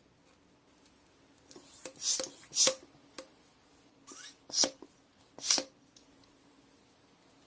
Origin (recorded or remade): recorded